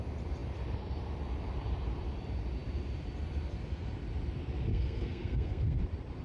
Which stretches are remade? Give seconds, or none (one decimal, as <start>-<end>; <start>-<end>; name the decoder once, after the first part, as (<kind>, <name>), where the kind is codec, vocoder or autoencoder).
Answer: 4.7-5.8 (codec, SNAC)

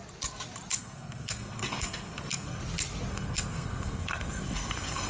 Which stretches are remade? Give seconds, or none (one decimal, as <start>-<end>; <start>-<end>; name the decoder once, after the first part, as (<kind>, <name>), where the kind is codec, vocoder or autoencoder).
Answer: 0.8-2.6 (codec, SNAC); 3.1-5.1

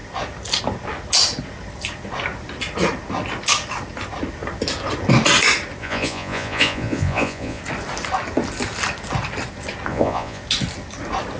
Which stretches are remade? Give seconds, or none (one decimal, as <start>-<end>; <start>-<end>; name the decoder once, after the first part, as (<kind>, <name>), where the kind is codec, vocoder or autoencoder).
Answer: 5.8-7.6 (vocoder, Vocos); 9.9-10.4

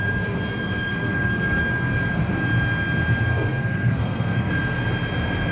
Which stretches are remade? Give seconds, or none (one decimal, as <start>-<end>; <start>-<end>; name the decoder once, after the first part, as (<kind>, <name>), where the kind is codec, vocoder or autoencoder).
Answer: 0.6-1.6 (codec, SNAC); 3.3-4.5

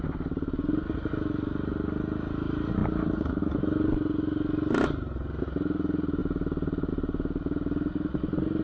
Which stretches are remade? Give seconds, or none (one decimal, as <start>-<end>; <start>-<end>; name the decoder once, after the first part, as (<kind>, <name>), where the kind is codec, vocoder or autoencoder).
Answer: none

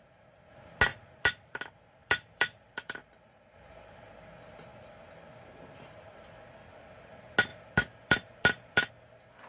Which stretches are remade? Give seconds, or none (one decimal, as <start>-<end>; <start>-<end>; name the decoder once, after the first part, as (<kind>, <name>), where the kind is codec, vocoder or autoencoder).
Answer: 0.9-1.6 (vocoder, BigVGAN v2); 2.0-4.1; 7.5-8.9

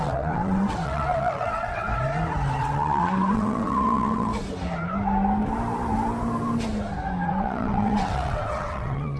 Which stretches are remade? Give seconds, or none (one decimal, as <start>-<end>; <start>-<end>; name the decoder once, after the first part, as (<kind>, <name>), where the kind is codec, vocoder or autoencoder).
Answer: 0.0-1.9 (vocoder, WaveNeXt); 2.6-4.3; 7.3-9.2

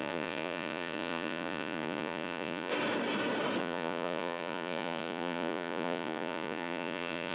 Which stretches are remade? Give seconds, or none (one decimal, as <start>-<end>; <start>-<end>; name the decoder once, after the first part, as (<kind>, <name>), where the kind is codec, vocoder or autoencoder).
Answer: 0.0-2.7 (vocoder, Vocos); 3.6-7.3